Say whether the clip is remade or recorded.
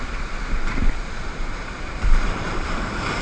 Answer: remade